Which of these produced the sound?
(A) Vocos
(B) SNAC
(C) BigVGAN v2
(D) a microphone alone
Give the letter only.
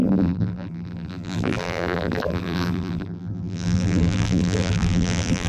C